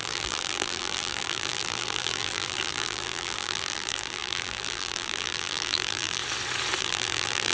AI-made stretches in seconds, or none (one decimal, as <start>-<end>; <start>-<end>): 0.0-6.2; 6.8-7.5